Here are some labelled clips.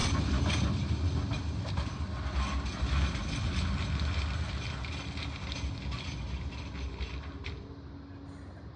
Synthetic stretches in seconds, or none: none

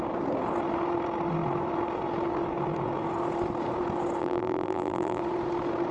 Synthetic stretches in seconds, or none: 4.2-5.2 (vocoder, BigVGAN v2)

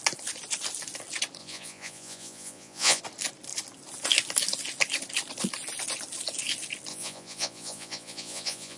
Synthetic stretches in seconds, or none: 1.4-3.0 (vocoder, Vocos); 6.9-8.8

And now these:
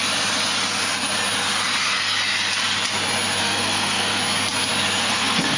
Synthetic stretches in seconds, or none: 3.4-4.2 (codec, SNAC); 5.0-5.6

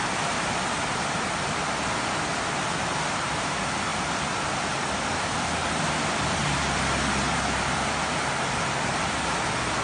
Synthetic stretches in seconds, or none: none

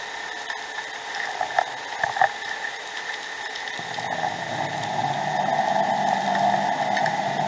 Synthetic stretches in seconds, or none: none

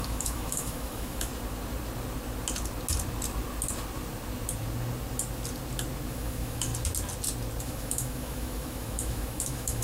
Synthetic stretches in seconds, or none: 0.0-1.3 (autoencoder, DAC-VAE); 6.1-6.7; 7.6-9.8